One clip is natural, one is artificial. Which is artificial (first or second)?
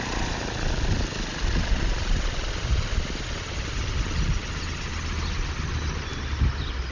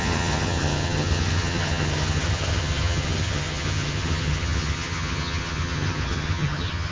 second